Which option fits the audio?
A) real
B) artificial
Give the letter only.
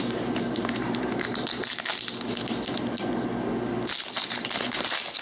A